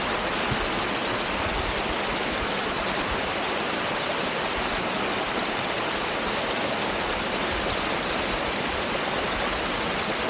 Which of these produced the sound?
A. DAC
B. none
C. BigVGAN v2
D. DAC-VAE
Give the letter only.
B